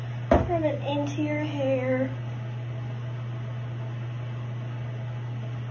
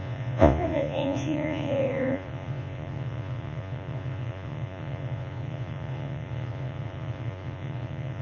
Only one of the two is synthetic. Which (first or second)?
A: second